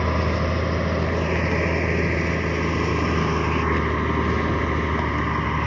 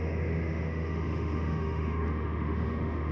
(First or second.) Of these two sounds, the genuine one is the first